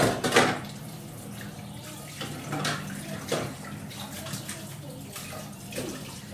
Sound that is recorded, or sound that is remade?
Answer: recorded